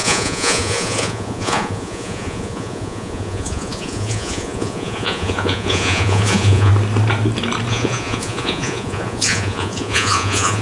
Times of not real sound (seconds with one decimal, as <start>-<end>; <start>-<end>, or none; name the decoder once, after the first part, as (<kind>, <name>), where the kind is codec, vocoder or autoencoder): 0.0-6.7 (vocoder, Vocos); 7.7-10.6